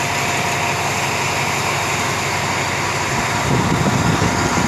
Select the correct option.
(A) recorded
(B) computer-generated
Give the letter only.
A